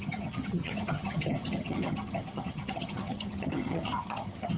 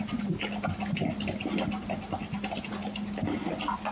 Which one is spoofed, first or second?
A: first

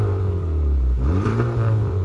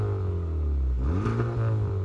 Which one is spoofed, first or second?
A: first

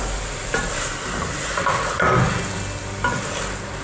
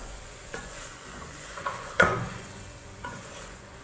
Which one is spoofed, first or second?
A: second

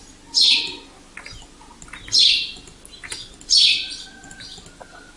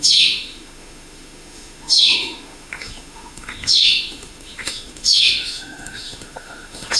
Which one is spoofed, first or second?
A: second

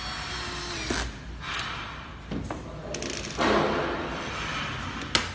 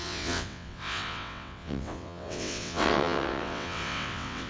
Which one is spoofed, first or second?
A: second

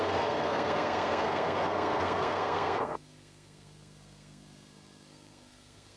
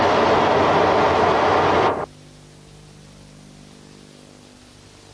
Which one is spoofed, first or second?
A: first